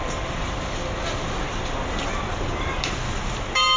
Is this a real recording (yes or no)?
yes